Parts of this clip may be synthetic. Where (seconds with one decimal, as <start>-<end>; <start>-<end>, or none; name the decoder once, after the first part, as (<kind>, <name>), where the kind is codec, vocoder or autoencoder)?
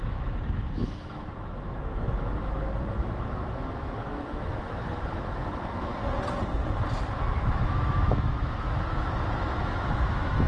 0.0-5.9 (autoencoder, DAC-VAE); 7.4-10.5